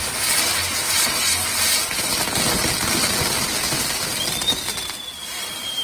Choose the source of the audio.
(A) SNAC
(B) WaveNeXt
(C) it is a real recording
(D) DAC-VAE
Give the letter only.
C